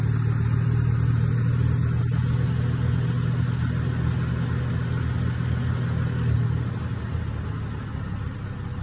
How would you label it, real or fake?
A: real